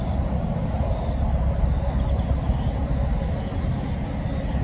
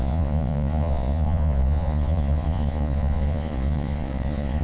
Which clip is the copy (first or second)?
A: second